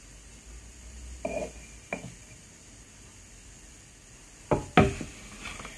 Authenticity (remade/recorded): recorded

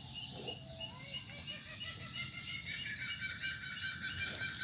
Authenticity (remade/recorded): recorded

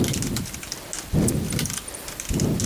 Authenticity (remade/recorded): recorded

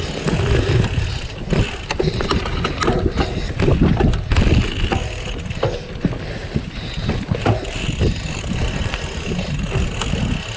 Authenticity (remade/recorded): recorded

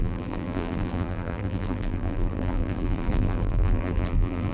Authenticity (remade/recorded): remade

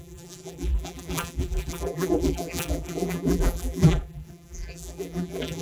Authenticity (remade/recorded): remade